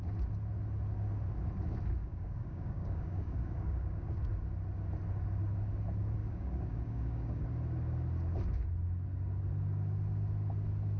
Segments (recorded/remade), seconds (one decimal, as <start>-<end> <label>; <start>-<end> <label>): 0.0-2.0 recorded; 2.0-4.2 remade; 4.2-6.2 recorded; 6.2-7.4 remade; 7.4-11.0 recorded

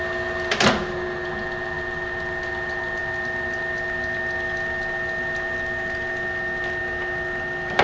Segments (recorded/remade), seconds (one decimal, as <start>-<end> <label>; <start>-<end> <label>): 0.0-7.8 recorded

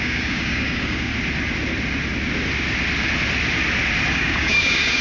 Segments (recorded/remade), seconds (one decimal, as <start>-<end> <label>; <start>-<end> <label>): 0.0-1.1 remade; 1.1-4.1 recorded; 4.1-5.0 remade

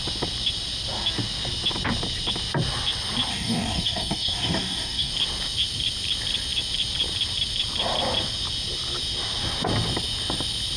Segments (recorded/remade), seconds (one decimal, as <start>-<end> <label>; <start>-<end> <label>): 0.0-3.3 recorded; 3.3-5.1 remade; 5.1-10.8 recorded